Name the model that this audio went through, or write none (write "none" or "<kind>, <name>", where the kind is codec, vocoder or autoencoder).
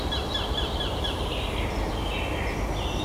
none